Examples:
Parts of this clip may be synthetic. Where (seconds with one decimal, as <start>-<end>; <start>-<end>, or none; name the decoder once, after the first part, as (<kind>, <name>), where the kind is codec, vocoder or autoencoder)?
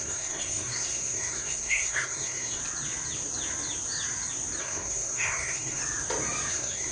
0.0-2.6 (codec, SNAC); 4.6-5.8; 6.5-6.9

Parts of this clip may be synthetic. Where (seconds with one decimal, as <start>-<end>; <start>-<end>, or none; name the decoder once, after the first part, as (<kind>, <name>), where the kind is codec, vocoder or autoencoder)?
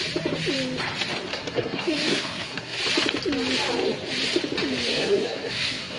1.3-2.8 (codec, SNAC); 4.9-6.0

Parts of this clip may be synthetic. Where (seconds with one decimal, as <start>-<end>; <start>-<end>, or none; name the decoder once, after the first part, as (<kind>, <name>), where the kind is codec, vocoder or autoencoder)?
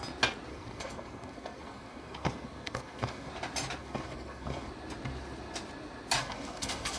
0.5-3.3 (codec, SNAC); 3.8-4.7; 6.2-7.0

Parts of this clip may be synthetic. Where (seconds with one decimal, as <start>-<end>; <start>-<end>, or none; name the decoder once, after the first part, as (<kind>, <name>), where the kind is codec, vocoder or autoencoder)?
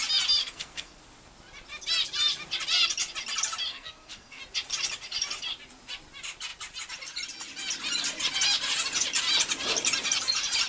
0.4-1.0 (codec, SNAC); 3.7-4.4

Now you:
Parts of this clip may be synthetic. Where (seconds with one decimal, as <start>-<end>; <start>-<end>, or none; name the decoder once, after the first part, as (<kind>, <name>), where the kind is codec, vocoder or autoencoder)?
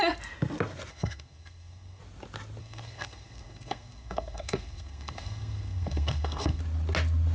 0.9-2.0 (codec, SNAC); 2.6-6.6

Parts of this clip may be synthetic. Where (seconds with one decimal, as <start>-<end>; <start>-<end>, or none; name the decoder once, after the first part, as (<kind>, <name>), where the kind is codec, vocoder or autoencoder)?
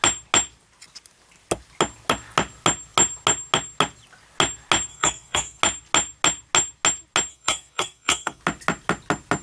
4.9-5.6 (codec, SNAC); 7.3-8.4